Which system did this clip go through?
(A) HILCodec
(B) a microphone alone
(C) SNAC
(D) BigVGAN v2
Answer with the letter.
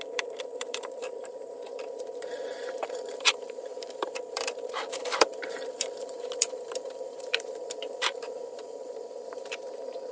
D